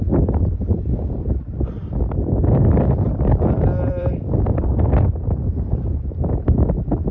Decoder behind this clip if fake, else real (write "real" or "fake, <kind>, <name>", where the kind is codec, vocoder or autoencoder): fake, vocoder, BigVGAN v2